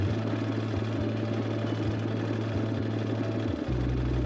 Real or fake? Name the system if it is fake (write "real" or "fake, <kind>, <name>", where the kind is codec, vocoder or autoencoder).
real